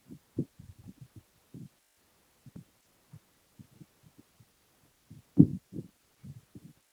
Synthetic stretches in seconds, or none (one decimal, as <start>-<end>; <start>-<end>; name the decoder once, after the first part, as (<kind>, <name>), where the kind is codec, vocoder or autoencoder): 0.0-1.0 (vocoder, BigVGAN v2)